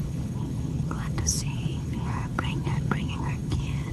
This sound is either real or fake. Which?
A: fake